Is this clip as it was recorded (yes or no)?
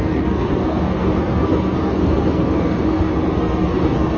no